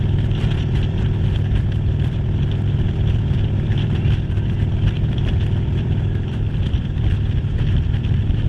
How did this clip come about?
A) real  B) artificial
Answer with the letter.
B